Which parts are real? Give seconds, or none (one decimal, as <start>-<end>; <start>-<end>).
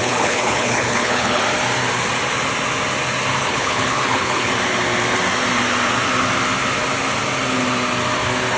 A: 1.4-3.4; 4.5-8.6